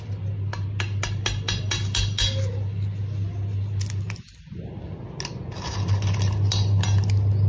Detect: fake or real real